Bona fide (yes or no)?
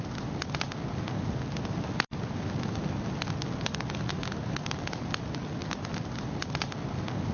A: yes